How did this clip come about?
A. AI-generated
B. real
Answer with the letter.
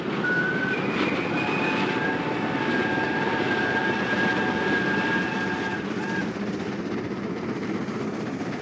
B